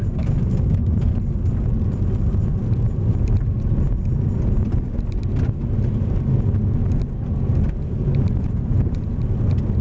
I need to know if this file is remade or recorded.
recorded